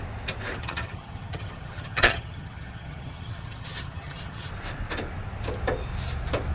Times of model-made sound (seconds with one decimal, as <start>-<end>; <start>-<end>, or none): 0.6-4.5